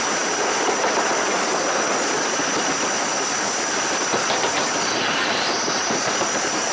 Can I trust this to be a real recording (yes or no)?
yes